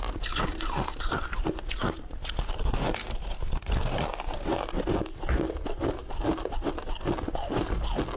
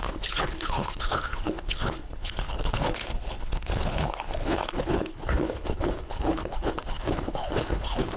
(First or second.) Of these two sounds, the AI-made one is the second